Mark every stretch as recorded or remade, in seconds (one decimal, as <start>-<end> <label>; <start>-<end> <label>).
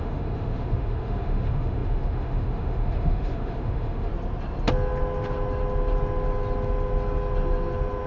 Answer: 0.0-4.1 remade; 4.1-8.1 recorded